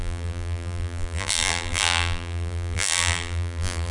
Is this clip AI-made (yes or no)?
yes